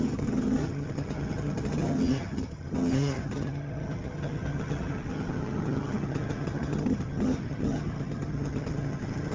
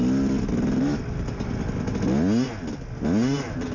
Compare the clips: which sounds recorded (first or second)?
second